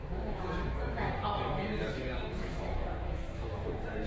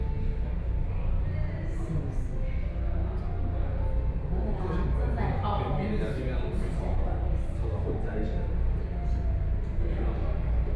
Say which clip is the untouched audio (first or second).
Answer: second